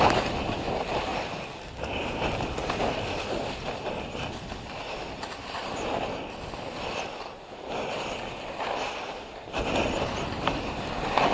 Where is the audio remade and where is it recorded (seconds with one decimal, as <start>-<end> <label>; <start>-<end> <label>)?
0.0-11.3 recorded